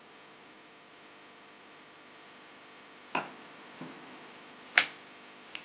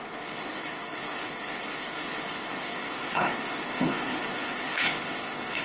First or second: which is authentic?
first